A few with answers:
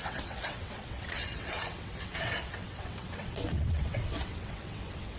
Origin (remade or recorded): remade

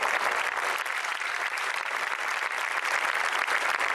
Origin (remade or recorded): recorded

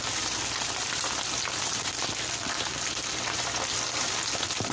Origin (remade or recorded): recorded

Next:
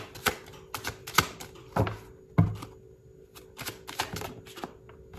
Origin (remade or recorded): recorded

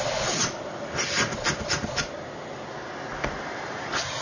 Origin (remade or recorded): recorded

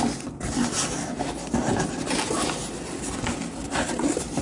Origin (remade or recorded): recorded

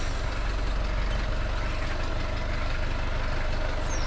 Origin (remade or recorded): recorded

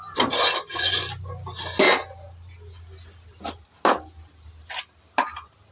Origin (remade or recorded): recorded